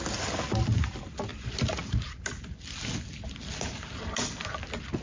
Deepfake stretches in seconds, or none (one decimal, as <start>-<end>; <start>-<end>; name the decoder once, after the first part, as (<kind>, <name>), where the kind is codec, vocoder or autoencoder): none